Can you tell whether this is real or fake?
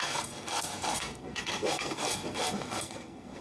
fake